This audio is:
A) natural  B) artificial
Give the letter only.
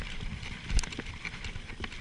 A